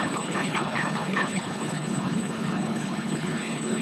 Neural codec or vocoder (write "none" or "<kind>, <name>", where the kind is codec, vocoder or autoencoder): codec, HILCodec